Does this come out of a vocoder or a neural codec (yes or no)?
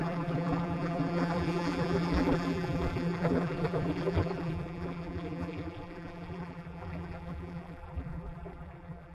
yes